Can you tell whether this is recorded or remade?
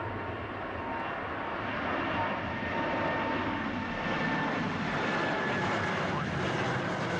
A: recorded